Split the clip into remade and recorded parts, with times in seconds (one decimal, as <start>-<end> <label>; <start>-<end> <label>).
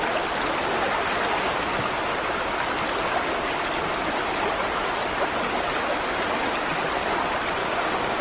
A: 0.0-7.6 recorded; 7.6-8.2 remade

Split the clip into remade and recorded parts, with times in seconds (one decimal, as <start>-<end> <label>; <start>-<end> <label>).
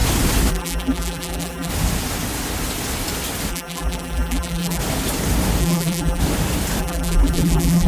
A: 0.0-0.5 recorded; 0.5-1.7 remade; 1.7-3.5 recorded; 3.5-4.8 remade; 4.8-5.6 recorded; 5.6-6.2 remade; 6.2-6.8 recorded; 6.8-7.9 remade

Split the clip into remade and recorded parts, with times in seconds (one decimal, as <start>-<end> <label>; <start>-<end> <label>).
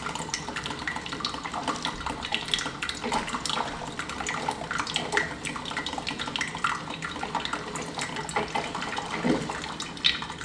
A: 0.0-10.4 recorded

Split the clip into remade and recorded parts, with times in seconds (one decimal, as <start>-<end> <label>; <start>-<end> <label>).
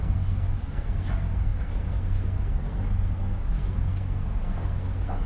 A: 0.0-5.3 remade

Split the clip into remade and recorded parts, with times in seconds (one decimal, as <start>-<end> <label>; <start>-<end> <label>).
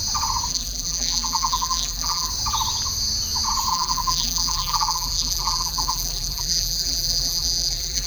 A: 0.0-0.5 recorded; 0.5-2.3 remade; 2.3-3.7 recorded; 3.7-8.1 remade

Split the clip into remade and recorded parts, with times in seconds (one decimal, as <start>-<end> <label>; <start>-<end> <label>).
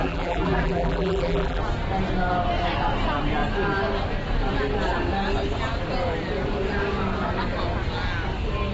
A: 0.0-1.6 remade; 1.6-8.7 recorded